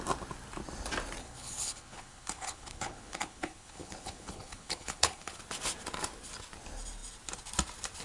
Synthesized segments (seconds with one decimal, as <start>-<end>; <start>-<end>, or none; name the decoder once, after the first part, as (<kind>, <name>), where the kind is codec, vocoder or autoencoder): 1.2-5.4 (codec, HILCodec)